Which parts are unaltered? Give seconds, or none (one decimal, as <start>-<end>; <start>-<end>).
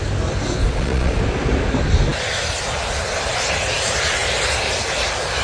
0.0-0.6; 1.2-5.4